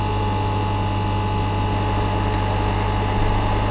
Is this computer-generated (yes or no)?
no